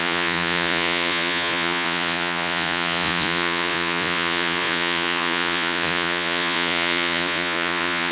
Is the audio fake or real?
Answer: fake